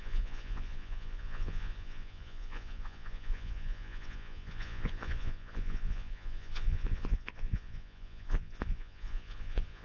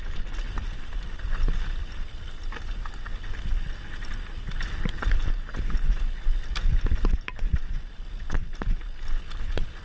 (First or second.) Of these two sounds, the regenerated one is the first